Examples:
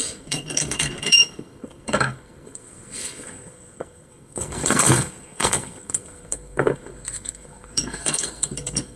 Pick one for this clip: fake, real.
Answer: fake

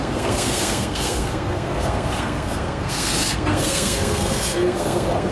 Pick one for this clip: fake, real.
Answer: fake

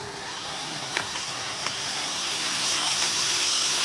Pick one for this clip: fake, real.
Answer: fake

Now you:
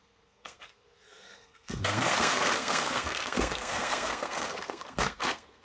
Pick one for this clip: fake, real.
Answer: fake